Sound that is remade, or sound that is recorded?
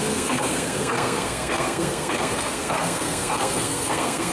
remade